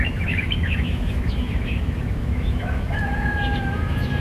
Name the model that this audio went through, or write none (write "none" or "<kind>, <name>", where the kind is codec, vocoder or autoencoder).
autoencoder, DAC-VAE